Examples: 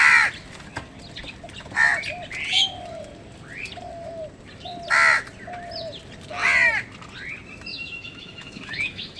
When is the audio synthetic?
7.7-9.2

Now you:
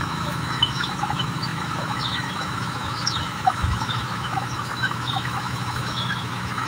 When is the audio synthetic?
0.0-6.7

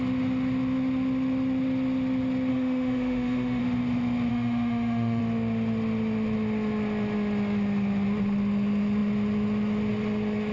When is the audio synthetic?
2.5-3.6; 4.3-5.2

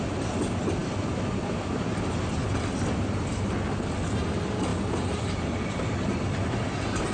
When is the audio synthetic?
none

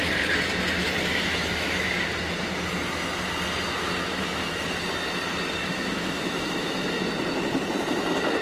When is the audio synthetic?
1.1-2.0; 4.1-4.6; 5.6-7.0